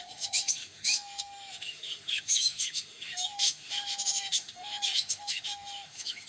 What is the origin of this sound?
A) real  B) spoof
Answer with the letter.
B